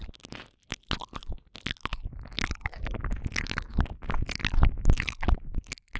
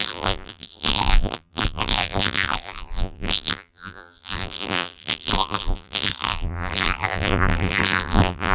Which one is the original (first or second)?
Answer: first